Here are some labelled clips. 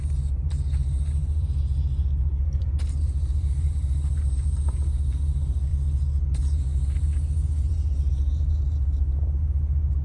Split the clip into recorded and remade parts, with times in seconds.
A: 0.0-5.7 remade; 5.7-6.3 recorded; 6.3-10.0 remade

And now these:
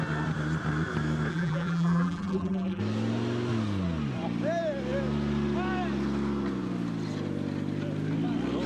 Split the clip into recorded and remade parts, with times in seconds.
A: 0.0-1.3 recorded; 1.3-2.8 remade; 2.8-8.7 recorded

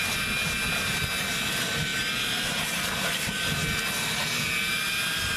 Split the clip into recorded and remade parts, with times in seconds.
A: 0.0-5.4 recorded

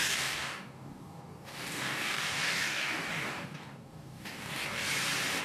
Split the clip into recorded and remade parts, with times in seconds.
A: 0.0-4.8 remade; 4.8-5.4 recorded